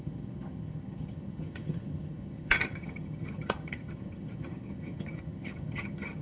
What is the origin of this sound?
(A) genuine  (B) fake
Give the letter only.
B